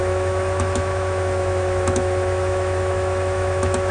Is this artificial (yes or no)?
yes